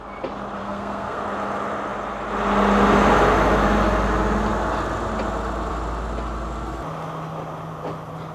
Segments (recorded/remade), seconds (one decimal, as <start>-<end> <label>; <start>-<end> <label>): 0.0-0.6 recorded; 0.6-1.2 remade; 1.2-8.3 recorded